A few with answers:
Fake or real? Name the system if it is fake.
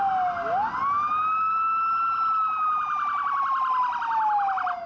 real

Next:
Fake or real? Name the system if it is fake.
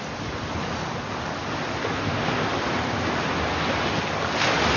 real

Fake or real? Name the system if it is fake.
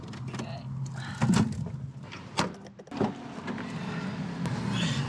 real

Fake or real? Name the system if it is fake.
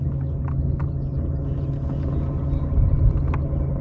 real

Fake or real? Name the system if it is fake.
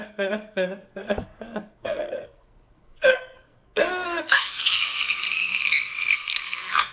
fake, codec, SNAC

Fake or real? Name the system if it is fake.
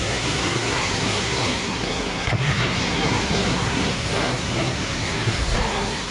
fake, codec, SNAC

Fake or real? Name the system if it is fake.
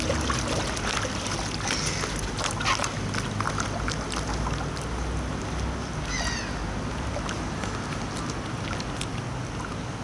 real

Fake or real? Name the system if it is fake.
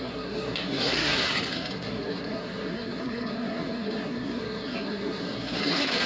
fake, codec, SNAC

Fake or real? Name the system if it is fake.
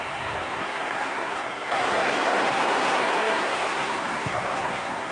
fake, codec, SNAC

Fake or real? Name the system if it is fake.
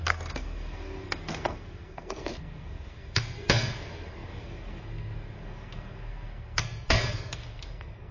fake, codec, SNAC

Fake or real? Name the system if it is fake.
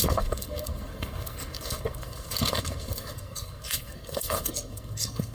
fake, codec, SNAC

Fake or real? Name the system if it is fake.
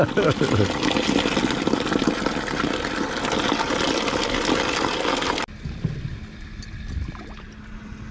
real